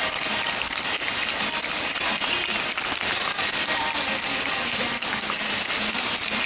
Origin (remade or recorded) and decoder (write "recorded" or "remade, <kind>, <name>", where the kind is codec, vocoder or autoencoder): recorded